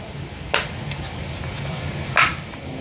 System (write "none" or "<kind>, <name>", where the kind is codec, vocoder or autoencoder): none